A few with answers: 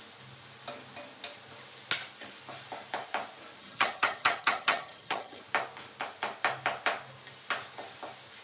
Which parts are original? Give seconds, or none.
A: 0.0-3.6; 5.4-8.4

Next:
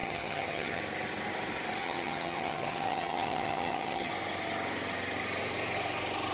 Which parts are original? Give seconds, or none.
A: 0.8-1.8; 4.1-6.3